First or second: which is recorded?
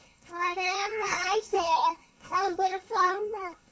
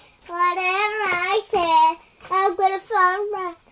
second